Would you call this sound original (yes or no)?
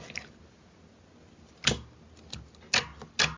yes